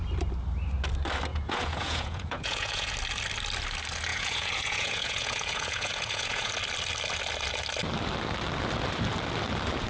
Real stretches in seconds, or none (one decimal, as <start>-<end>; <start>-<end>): 0.0-1.3; 2.9-4.1; 6.5-9.9